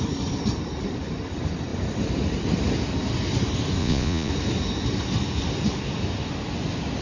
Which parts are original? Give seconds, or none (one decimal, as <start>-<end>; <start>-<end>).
0.0-3.8; 4.3-7.0